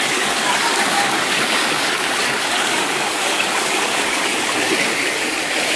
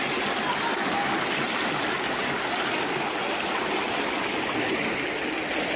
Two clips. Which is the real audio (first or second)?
second